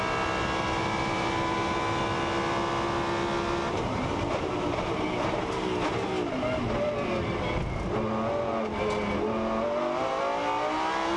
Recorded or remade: recorded